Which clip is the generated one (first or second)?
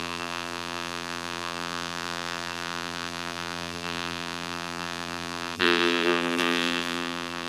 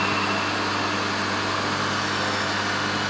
first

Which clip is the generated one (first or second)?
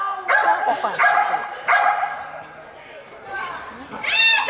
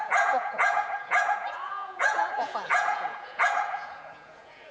second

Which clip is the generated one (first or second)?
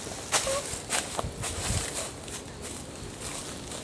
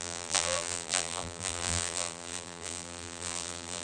second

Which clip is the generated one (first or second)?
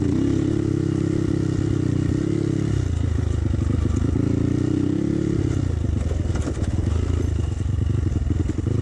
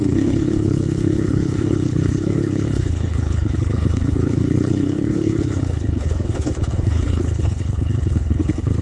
second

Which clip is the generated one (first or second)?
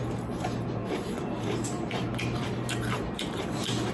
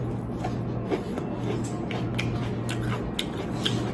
first